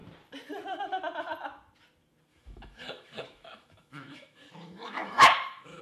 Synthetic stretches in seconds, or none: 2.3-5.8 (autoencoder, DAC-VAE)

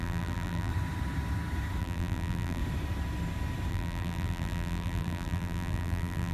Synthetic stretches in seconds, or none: 0.0-0.7 (vocoder, BigVGAN v2); 1.8-2.6; 3.7-6.3